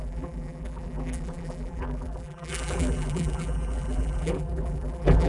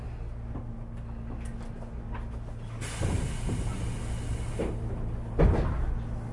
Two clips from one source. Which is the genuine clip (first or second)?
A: second